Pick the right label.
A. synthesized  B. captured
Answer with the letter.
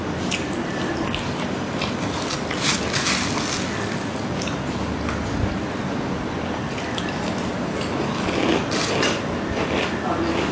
B